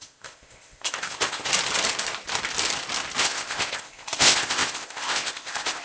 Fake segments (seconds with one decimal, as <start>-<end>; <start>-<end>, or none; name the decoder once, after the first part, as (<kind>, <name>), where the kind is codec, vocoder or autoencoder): 0.0-1.5 (codec, ZipCodec); 3.2-5.8